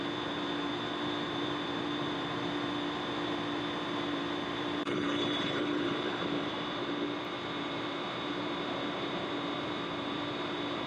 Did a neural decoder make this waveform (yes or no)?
yes